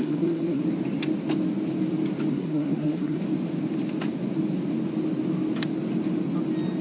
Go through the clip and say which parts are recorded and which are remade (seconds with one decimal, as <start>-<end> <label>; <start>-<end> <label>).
0.0-0.6 remade; 0.6-2.3 recorded; 2.3-3.2 remade; 3.2-6.8 recorded